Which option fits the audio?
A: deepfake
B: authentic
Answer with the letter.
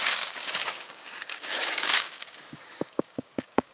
A